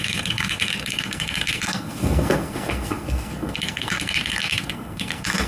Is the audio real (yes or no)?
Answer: no